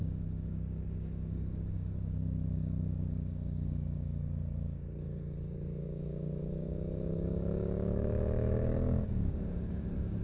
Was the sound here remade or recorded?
remade